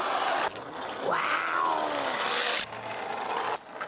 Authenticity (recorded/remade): recorded